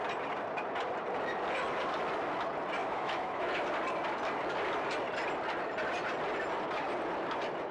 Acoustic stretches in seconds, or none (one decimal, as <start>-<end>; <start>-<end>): 0.0-2.8; 3.5-7.7